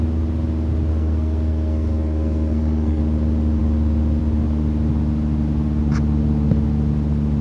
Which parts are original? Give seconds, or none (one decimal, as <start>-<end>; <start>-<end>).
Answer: 0.0-0.9; 3.0-7.4